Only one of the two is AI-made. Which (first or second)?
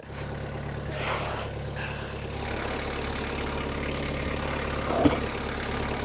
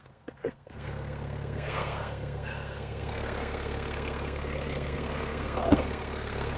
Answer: second